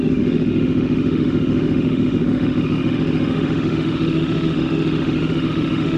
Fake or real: fake